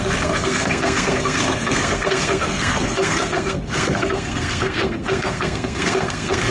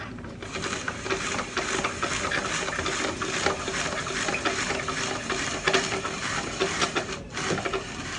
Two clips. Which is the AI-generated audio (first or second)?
first